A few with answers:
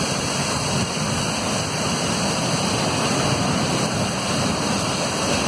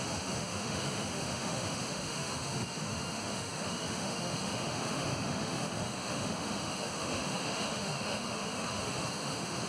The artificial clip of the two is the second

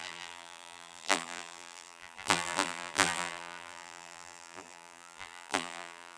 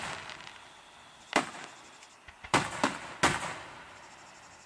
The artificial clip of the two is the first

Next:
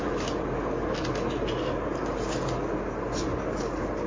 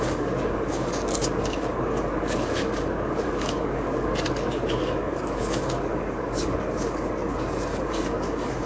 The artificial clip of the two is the second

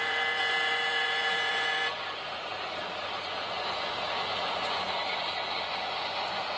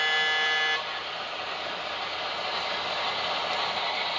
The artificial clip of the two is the first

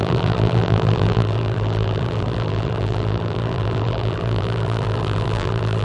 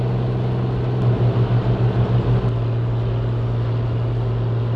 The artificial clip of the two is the first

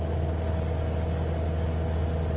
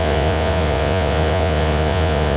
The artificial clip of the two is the second